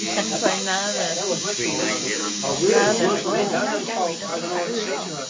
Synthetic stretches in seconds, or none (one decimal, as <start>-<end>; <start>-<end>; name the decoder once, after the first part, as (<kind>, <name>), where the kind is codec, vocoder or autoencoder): none